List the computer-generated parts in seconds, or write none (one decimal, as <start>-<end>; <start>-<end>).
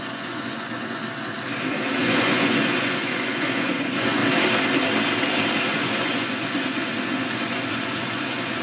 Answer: 0.0-1.0; 2.0-4.2; 5.7-8.6